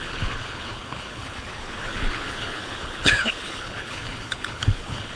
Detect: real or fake fake